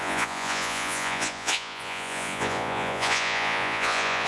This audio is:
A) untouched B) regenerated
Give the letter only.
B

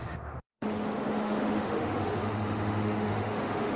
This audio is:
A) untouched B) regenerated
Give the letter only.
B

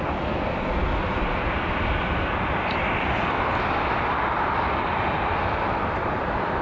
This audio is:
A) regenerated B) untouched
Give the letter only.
A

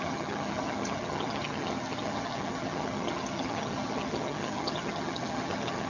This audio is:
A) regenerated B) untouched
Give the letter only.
A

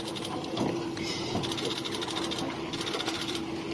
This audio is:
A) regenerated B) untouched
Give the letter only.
B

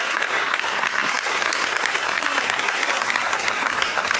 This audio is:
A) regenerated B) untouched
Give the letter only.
A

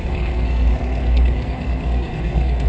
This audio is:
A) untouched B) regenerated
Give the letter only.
B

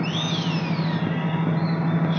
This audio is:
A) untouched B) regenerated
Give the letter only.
A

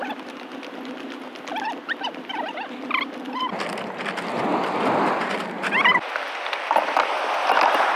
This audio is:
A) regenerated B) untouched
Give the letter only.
B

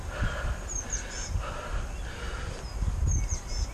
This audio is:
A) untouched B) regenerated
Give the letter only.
A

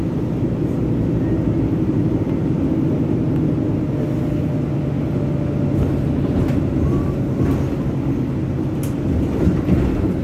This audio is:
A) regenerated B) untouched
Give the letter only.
B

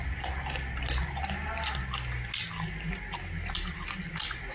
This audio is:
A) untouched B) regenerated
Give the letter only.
A